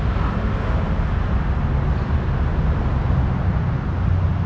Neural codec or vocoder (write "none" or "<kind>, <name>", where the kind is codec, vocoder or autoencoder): none